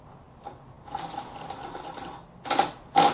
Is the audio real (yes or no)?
yes